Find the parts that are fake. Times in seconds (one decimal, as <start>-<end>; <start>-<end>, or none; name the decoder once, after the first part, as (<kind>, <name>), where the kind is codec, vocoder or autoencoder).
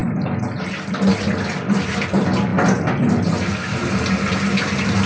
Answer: 0.0-2.5 (vocoder, BigVGAN v2); 4.1-5.1